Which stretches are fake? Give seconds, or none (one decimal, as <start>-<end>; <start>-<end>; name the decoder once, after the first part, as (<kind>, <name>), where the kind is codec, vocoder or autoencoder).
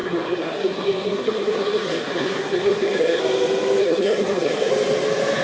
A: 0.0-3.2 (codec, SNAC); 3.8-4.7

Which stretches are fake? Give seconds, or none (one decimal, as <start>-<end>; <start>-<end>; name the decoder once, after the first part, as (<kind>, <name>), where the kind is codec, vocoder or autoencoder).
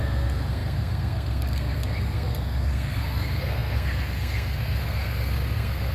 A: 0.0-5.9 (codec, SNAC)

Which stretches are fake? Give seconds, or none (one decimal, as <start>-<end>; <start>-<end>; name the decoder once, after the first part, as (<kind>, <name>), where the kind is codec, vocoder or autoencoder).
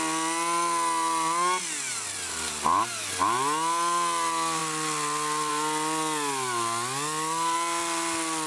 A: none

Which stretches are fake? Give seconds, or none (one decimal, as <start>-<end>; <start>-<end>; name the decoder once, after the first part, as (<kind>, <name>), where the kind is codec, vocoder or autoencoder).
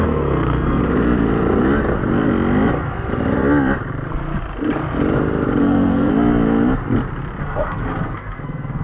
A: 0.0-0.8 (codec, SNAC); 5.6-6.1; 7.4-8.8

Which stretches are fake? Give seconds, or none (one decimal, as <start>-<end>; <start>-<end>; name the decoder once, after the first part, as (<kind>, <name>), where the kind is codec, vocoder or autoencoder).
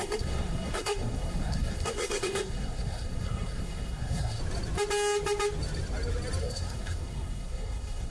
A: 0.0-4.4 (codec, SNAC); 6.4-8.1